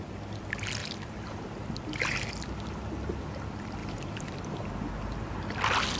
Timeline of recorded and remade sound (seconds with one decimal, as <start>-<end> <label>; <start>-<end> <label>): 0.0-0.8 recorded; 0.8-1.4 remade; 1.4-3.8 recorded; 3.8-4.9 remade; 4.9-6.0 recorded